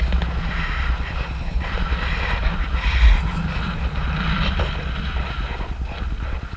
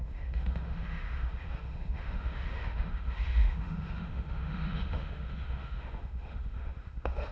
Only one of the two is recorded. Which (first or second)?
first